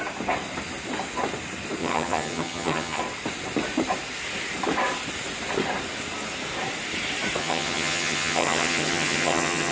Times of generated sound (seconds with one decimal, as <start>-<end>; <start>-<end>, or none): 1.8-3.0; 7.4-9.7